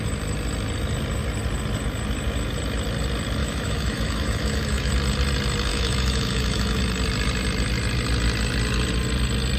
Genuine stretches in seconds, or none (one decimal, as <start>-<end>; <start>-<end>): 0.0-3.4; 4.9-5.7; 6.8-9.6